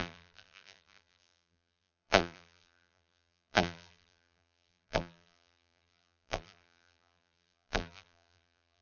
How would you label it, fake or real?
fake